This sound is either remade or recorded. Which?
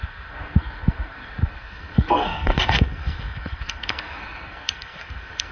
remade